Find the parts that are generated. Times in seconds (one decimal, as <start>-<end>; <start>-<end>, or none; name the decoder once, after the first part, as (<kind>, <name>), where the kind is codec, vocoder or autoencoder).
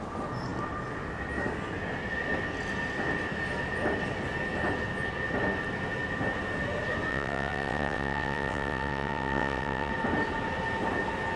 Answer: 7.1-9.9 (vocoder, WaveNeXt)